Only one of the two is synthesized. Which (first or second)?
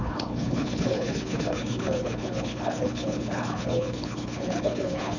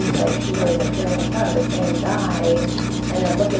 first